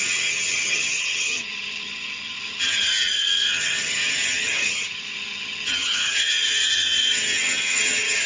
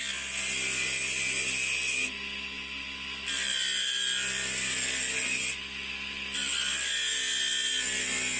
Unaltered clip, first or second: second